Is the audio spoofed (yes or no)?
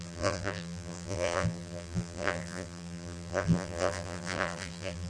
yes